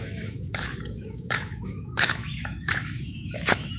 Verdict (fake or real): fake